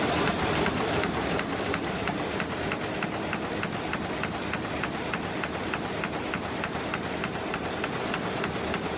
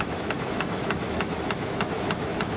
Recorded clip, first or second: first